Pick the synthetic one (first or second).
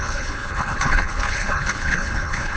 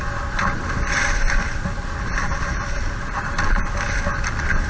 first